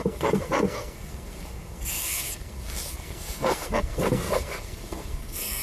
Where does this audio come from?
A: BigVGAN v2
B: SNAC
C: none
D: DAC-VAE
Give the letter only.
B